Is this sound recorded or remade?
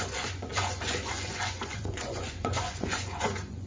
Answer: remade